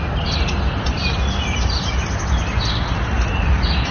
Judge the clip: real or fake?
real